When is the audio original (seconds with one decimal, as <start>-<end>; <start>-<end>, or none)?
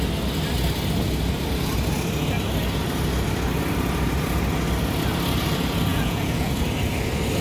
0.0-5.9; 6.5-7.4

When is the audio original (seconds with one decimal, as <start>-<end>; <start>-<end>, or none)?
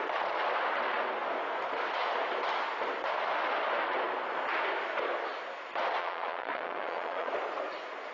0.0-6.0; 7.3-8.1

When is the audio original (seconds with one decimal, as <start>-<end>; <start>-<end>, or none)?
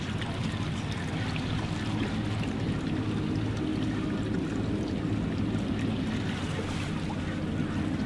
0.0-8.1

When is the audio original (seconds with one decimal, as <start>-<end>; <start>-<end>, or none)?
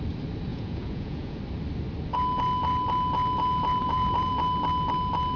0.0-0.5; 1.4-3.8; 4.3-5.4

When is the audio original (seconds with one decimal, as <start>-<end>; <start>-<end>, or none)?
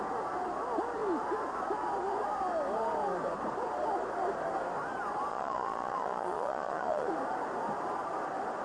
0.0-5.3; 7.1-8.6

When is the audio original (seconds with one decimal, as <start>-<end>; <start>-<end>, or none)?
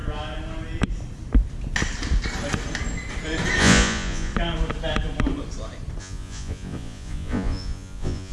0.0-3.6; 4.3-6.0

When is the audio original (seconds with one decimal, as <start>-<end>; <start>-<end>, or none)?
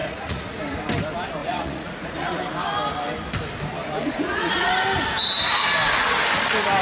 0.6-1.4; 2.4-4.0; 4.7-6.8